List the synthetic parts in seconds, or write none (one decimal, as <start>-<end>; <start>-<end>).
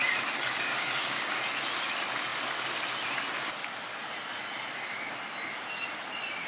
0.7-1.4